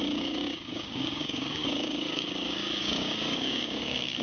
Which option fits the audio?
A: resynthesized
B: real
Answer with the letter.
A